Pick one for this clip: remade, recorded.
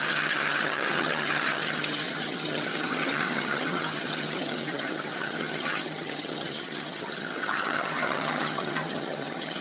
remade